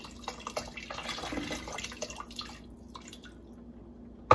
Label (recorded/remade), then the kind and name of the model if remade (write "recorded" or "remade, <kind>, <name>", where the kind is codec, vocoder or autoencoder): recorded